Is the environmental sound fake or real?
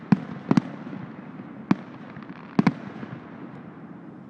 real